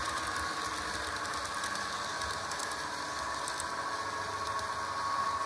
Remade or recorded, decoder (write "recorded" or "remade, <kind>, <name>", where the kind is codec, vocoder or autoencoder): recorded